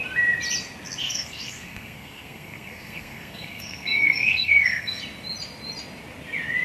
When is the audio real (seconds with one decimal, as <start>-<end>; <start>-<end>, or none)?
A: 0.0-1.0; 5.0-6.6